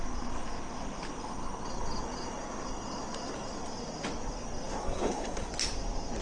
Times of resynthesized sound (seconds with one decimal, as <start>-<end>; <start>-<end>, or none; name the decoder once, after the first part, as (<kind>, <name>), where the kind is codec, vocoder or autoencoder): 4.7-5.5 (codec, SNAC)

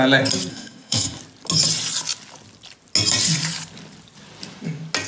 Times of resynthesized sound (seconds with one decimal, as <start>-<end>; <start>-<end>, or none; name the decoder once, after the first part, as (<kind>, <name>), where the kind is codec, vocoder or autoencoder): 0.5-1.2 (codec, SNAC)

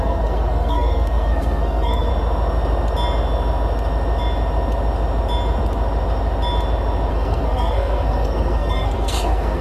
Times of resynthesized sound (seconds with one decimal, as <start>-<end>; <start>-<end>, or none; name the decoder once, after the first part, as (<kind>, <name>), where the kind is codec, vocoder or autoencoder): 0.0-2.1 (codec, SNAC); 7.1-9.6

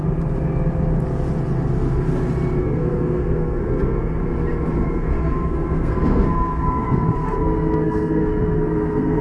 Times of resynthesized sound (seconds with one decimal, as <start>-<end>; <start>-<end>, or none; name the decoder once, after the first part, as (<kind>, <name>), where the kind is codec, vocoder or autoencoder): 2.6-4.2 (codec, SNAC); 4.9-9.2

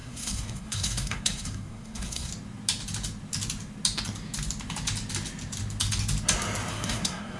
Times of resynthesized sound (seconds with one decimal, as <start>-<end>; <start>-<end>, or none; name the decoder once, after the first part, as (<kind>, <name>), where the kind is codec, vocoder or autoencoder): 0.0-2.3 (codec, SNAC); 6.7-7.4

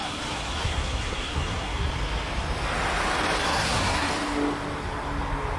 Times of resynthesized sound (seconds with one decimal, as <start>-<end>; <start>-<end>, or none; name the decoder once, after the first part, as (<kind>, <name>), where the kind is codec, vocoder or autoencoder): 0.0-1.9 (codec, SNAC); 3.4-4.1